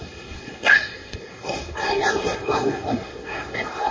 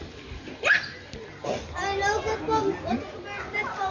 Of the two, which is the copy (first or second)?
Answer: first